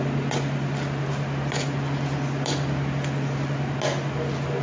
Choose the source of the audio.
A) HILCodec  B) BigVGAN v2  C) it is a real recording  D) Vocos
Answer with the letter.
C